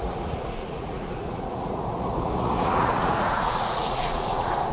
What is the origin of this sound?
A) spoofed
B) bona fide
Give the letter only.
A